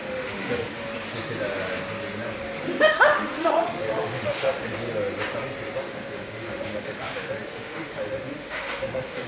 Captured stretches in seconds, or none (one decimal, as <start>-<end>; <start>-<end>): 0.8-2.8; 4.7-5.8